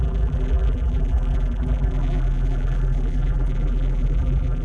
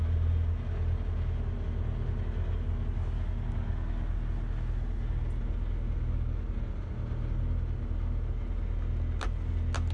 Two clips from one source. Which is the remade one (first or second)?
first